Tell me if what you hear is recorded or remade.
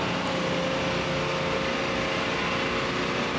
recorded